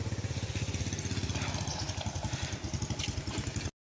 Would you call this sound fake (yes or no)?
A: no